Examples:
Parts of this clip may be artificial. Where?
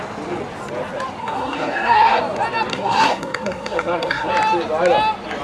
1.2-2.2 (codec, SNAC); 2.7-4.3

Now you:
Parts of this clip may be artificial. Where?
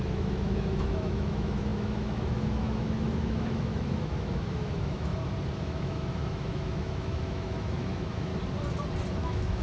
0.0-5.1 (autoencoder, DAC-VAE); 5.6-8.3; 9.1-9.6